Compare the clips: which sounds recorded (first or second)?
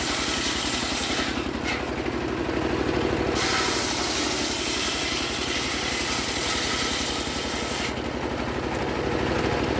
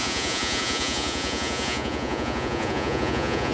first